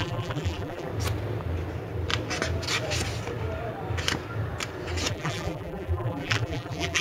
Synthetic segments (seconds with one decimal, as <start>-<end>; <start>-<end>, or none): 0.0-0.9; 5.1-7.0